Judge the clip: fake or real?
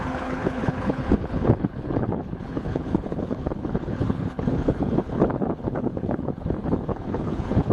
fake